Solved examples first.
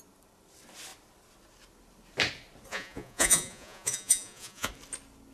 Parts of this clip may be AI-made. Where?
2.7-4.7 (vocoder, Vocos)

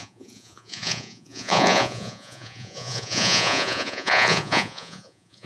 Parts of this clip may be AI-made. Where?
0.0-5.5 (vocoder, Vocos)

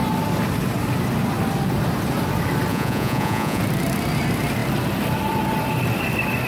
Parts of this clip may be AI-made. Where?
2.7-3.6 (vocoder, Vocos)